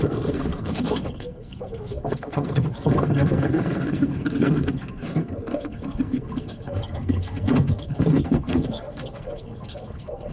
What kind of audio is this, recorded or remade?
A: remade